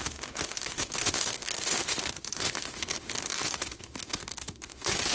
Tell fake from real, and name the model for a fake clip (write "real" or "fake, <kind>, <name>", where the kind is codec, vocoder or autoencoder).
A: fake, autoencoder, DAC-VAE